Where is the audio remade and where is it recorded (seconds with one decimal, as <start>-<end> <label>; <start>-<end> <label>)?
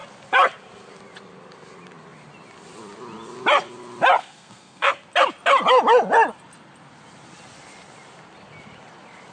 0.0-4.2 recorded; 4.2-4.9 remade; 4.9-9.3 recorded